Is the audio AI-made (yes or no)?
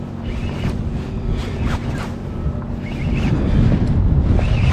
no